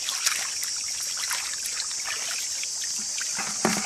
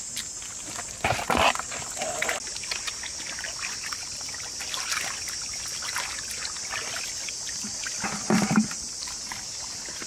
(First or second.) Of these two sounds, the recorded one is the second